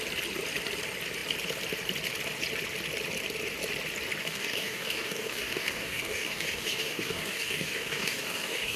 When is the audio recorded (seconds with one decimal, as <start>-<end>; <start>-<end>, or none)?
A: 0.0-4.2